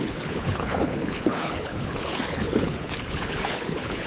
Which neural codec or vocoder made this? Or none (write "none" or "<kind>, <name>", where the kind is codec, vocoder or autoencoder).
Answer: codec, HILCodec